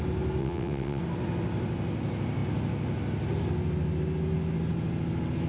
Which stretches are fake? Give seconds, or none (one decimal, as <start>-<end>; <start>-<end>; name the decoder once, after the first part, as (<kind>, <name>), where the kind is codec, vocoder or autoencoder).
0.4-1.0 (vocoder, WaveNeXt)